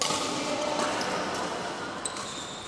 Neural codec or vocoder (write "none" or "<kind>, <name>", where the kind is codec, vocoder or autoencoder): none